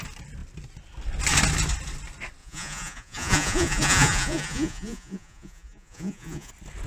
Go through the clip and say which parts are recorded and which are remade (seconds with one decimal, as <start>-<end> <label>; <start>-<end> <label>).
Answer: 0.0-2.4 recorded; 2.4-6.5 remade; 6.5-6.9 recorded